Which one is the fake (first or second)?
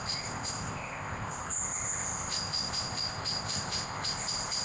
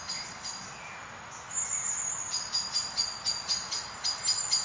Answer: first